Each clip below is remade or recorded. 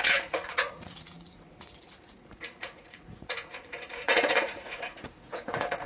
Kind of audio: remade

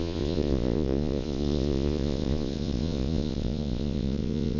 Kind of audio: remade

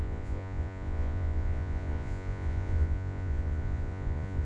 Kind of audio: remade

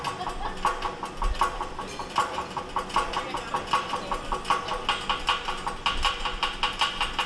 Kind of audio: recorded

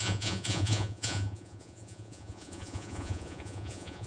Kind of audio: remade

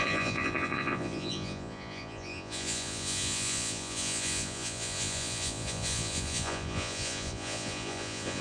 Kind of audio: remade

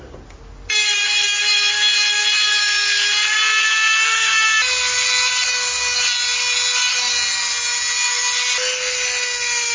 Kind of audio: recorded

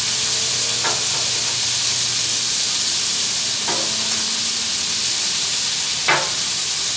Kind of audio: recorded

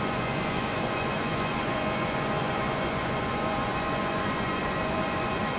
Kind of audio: remade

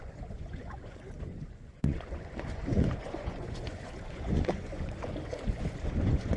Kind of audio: remade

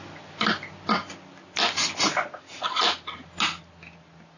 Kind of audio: recorded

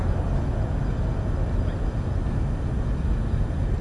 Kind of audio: recorded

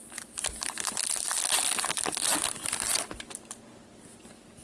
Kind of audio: recorded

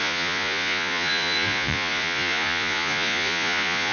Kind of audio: remade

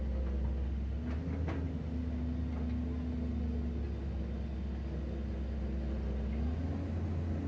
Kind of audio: recorded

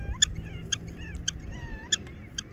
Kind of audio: recorded